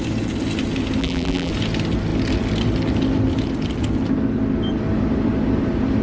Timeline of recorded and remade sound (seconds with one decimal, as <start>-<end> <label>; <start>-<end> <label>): 0.0-1.0 recorded; 1.0-1.5 remade; 1.5-6.0 recorded

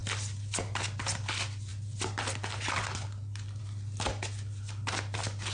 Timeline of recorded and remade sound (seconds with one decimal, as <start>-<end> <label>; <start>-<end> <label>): 0.0-5.5 recorded

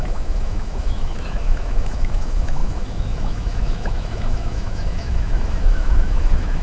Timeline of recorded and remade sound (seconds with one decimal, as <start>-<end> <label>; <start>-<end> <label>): 0.0-6.6 remade

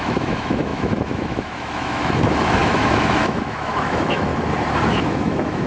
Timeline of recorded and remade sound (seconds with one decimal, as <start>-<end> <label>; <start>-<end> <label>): 0.0-4.3 remade; 4.3-4.9 recorded; 4.9-5.7 remade

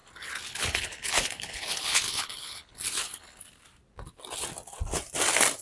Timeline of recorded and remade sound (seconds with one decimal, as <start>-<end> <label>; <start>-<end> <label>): 0.0-3.4 remade; 3.4-5.6 recorded